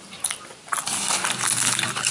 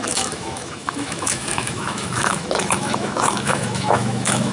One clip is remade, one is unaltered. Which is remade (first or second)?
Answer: second